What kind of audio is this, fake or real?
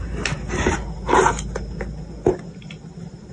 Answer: real